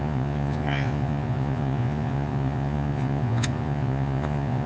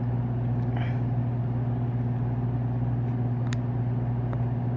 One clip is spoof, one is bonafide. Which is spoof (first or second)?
first